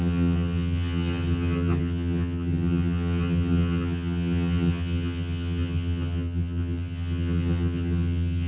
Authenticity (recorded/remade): remade